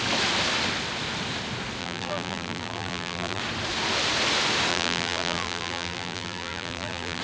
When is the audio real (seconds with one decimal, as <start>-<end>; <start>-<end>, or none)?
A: 0.0-1.8; 3.4-4.7